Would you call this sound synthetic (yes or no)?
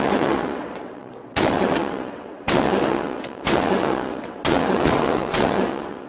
yes